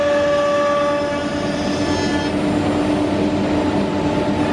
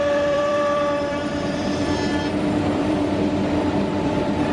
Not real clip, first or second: second